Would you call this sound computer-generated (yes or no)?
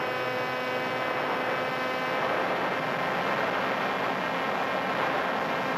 no